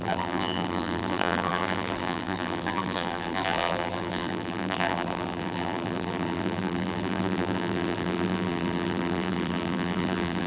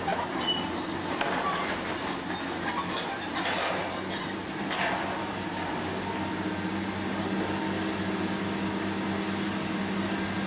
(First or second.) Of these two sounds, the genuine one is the second